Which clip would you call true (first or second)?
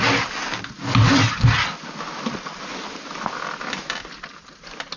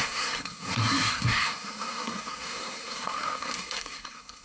first